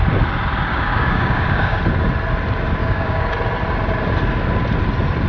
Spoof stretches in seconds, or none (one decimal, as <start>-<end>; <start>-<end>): 0.7-1.8; 2.8-3.3